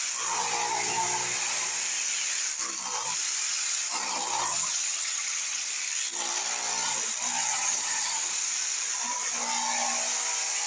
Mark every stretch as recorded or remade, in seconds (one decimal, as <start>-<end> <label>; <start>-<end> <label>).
0.0-4.5 recorded; 4.5-5.7 remade; 5.7-7.5 recorded; 7.5-8.3 remade; 8.3-10.7 recorded